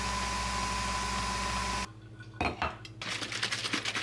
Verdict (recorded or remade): recorded